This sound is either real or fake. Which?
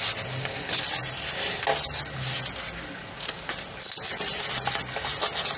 real